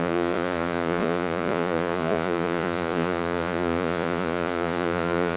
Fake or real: fake